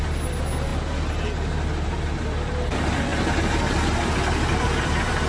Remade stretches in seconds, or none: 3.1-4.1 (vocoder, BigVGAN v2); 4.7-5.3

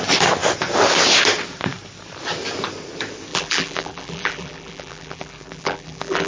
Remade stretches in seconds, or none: 3.3-6.3 (vocoder, BigVGAN v2)

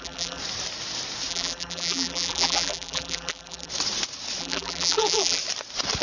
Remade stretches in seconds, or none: 0.0-0.4 (vocoder, BigVGAN v2); 1.3-3.7; 4.4-5.4

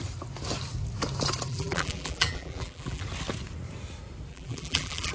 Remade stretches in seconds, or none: 1.5-3.0 (vocoder, BigVGAN v2); 4.3-5.1

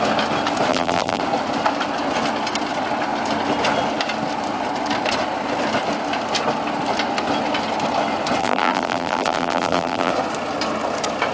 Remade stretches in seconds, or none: 0.7-1.2 (vocoder, BigVGAN v2); 8.4-10.1